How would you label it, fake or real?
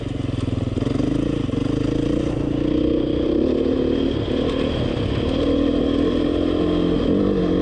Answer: real